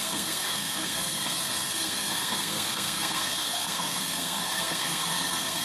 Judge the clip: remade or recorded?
remade